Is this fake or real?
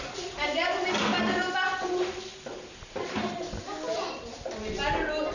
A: real